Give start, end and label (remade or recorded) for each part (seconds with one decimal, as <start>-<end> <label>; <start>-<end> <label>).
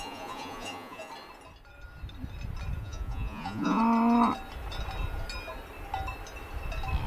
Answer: 0.0-1.1 remade; 1.1-2.8 recorded; 2.8-3.8 remade; 3.8-7.1 recorded